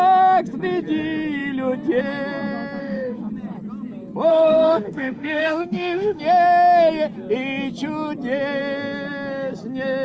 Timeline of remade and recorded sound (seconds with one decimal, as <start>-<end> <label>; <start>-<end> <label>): 0.0-2.8 recorded; 2.8-3.3 remade; 3.3-4.3 recorded; 4.3-6.2 remade; 6.2-10.0 recorded